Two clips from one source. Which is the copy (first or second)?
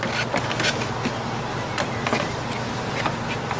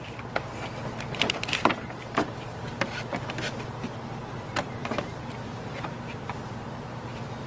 second